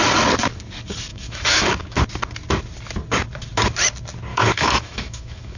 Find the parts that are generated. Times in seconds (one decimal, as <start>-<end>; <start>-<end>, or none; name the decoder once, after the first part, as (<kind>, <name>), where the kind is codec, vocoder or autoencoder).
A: 1.1-2.0 (autoencoder, DAC-VAE); 4.3-5.6